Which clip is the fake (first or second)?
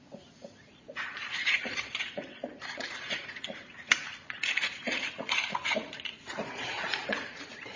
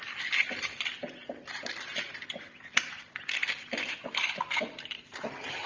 first